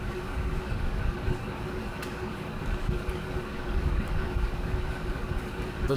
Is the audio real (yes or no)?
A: no